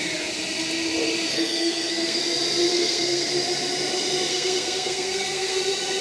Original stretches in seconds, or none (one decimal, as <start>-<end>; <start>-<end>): 0.0-1.3; 2.2-2.7; 3.3-4.3; 5.6-6.0